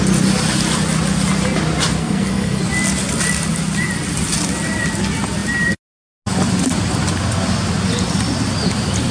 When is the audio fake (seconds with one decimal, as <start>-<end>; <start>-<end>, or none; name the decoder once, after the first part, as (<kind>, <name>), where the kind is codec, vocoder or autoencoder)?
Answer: 2.0-2.6 (codec, SNAC)